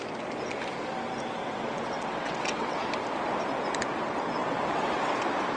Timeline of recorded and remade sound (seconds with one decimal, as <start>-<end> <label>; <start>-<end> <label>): 0.0-1.4 recorded; 1.4-2.8 remade; 2.8-4.4 recorded; 4.4-5.1 remade; 5.1-5.6 recorded